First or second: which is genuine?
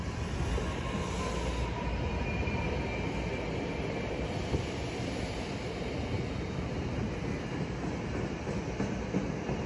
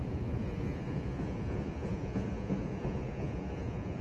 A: first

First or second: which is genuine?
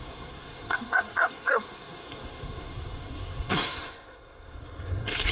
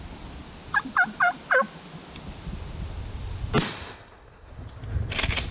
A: second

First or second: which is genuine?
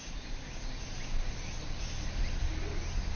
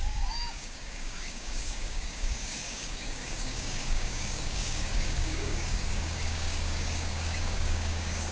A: first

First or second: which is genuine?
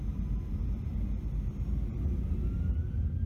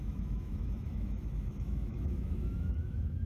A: first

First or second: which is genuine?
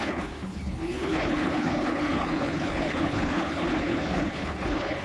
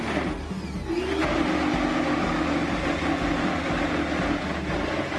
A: second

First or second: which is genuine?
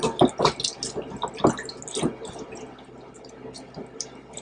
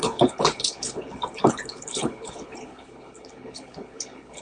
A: first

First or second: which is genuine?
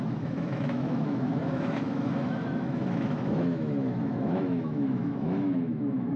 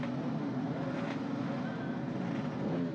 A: second